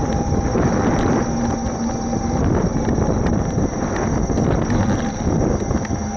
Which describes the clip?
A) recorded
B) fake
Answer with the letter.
A